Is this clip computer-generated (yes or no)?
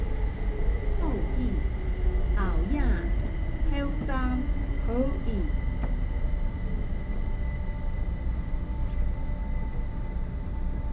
no